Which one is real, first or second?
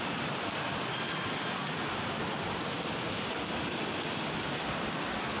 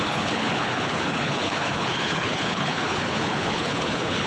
first